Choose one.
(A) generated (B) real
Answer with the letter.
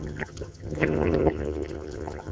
A